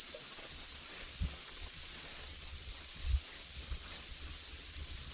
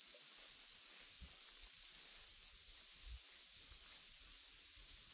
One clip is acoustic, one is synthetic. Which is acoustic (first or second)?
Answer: second